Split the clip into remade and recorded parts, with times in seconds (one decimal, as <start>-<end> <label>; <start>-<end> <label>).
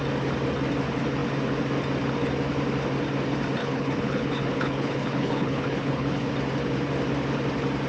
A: 0.0-3.6 recorded; 3.6-6.3 remade; 6.3-7.9 recorded